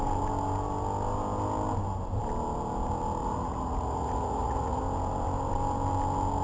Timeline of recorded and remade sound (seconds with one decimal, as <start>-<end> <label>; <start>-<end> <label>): 0.0-3.2 recorded; 3.2-4.8 remade; 4.8-6.4 recorded